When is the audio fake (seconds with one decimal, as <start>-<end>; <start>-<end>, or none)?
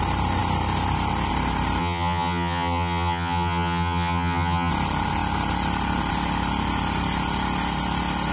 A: 1.8-4.7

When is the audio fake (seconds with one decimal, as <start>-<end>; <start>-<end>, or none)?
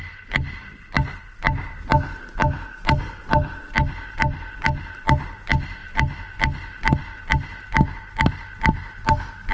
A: none